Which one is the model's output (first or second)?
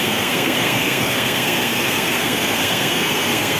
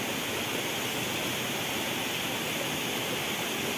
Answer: first